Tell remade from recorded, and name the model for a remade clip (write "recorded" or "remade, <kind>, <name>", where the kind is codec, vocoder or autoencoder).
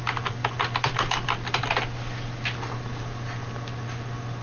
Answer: recorded